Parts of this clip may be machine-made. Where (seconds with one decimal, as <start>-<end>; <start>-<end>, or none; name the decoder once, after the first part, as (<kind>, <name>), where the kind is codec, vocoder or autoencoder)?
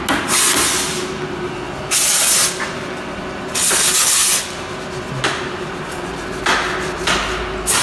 none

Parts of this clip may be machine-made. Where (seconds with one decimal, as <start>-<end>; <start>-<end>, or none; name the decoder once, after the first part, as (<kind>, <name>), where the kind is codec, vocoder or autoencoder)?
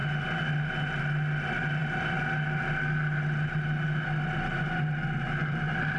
none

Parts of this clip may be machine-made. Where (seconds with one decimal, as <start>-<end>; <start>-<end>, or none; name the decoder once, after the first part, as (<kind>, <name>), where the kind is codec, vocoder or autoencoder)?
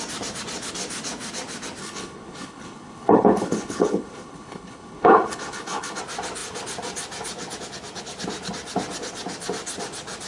1.8-6.0 (codec, HILCodec)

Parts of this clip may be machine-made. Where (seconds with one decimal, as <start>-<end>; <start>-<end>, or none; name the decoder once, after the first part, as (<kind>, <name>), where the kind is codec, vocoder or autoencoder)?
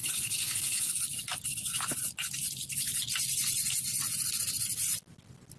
0.0-0.9 (codec, HILCodec)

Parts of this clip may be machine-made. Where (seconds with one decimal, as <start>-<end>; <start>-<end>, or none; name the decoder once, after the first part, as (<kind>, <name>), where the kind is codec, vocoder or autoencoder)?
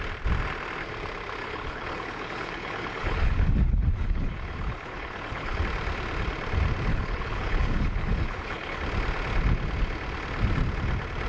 1.4-5.6 (codec, HILCodec); 6.9-8.8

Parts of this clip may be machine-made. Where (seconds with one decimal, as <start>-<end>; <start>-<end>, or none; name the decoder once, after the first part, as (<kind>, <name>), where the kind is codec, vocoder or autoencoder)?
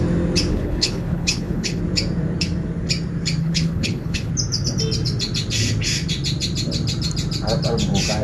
0.5-1.8 (codec, HILCodec); 3.4-4.3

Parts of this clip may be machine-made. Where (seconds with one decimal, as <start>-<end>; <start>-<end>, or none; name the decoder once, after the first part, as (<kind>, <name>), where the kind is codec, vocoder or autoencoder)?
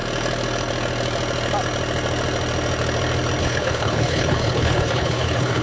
3.4-5.6 (codec, HILCodec)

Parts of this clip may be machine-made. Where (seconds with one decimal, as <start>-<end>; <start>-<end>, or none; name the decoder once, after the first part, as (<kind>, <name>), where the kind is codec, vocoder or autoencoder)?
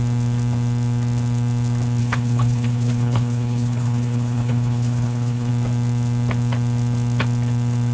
2.0-5.5 (codec, HILCodec)